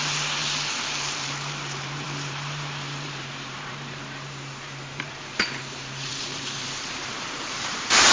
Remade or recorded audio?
remade